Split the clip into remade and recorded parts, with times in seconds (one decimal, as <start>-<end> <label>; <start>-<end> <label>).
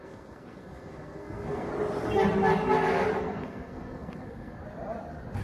0.0-1.7 remade; 1.7-3.2 recorded; 3.2-4.6 remade; 4.6-5.4 recorded